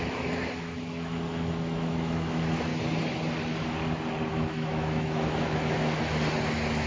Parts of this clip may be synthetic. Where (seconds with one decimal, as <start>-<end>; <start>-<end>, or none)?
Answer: 0.0-2.7; 4.3-5.8